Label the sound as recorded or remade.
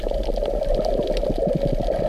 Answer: recorded